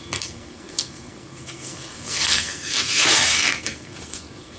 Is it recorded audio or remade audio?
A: remade